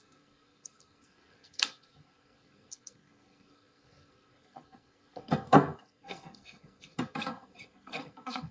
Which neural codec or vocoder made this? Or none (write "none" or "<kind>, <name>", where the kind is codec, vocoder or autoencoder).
codec, SNAC